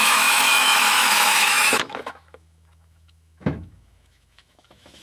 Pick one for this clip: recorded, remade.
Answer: remade